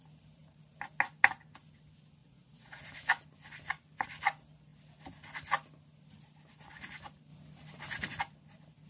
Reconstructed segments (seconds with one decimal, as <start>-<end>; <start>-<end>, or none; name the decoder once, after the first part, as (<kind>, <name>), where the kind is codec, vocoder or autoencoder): 2.2-2.8 (vocoder, Vocos)